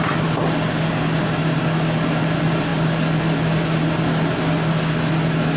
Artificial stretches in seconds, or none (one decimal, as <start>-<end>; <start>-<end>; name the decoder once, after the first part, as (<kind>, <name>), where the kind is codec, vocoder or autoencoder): none